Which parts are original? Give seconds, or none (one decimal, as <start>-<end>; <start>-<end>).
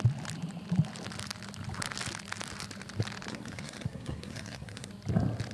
0.0-3.3; 4.9-5.5